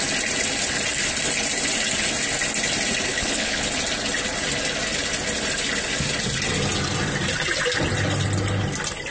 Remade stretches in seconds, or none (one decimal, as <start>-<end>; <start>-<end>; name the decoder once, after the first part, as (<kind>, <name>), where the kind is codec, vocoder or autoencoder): 3.1-3.7 (codec, HILCodec)